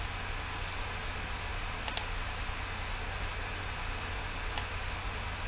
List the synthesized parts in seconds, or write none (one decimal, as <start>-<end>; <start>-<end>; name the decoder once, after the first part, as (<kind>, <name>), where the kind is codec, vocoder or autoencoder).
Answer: none

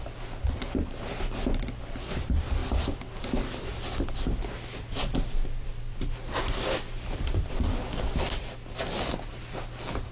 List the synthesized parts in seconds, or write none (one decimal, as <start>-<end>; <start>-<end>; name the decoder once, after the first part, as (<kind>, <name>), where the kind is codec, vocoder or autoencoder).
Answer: none

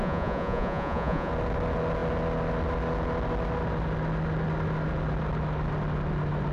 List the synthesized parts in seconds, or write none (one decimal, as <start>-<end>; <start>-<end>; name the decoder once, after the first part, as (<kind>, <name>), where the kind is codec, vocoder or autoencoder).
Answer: 0.0-1.3 (vocoder, Vocos)

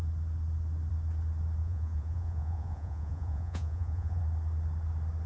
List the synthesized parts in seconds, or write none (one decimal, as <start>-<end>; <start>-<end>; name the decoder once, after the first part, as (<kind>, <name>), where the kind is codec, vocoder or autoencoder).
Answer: 1.6-4.2 (vocoder, Vocos)

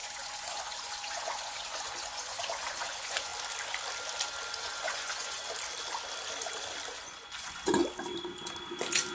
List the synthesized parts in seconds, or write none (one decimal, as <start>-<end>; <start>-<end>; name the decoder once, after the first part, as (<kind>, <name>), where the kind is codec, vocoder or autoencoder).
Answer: 0.0-3.3 (vocoder, Vocos); 4.6-5.4; 6.9-7.8

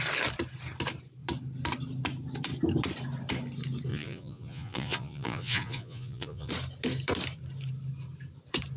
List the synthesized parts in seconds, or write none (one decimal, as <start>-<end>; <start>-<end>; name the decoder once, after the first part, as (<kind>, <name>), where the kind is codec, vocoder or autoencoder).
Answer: 3.9-6.5 (vocoder, Vocos)

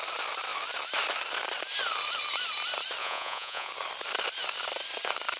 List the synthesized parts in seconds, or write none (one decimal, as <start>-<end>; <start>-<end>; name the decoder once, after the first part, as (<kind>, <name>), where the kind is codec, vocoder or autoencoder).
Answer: 3.0-3.7 (vocoder, Vocos)

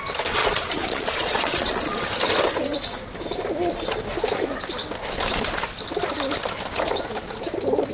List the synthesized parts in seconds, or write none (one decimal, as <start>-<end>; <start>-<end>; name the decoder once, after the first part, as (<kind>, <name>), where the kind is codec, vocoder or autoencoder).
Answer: 0.4-2.0 (vocoder, Vocos)